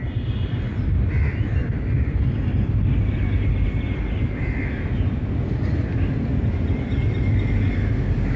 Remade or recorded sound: recorded